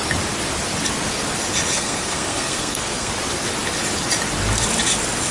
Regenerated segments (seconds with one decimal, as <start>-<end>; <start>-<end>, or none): 1.7-3.1